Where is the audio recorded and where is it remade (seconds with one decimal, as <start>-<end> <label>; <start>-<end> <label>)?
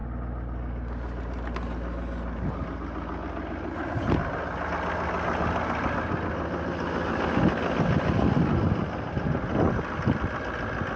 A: 0.0-11.0 recorded